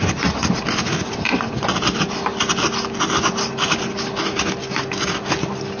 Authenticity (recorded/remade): recorded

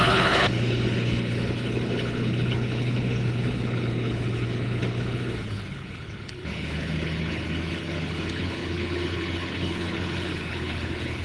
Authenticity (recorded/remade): remade